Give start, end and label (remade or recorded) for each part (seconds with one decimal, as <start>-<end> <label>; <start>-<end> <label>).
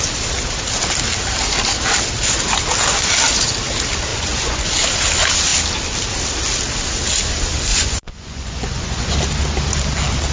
0.0-4.1 recorded; 4.1-4.7 remade; 4.7-7.7 recorded; 7.7-9.1 remade; 9.1-10.3 recorded